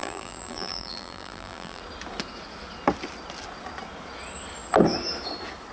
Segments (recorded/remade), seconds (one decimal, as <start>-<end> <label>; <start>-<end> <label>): 0.0-1.8 remade; 1.8-5.7 recorded